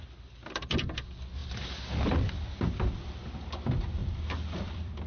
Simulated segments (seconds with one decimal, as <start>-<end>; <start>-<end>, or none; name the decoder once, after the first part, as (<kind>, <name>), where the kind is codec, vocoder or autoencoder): 4.0-5.1 (vocoder, BigVGAN v2)